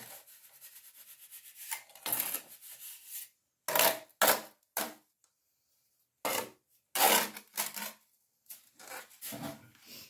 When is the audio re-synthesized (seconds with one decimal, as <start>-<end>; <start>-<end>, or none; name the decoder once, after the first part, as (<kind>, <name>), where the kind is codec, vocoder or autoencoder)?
none